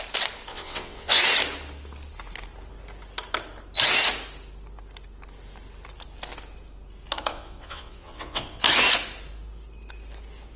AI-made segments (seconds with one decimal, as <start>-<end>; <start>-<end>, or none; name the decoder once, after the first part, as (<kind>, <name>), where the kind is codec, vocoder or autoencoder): 0.5-1.2 (vocoder, WaveNeXt); 7.3-8.6